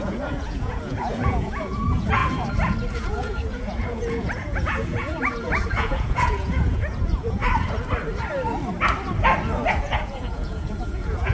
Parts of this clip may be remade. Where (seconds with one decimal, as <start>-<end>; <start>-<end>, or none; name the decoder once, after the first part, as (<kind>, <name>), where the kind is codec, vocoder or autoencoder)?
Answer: 0.0-2.2 (vocoder, Vocos); 2.9-7.4; 9.7-11.3